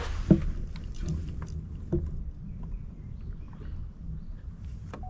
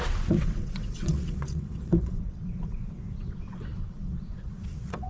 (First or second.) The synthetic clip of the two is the second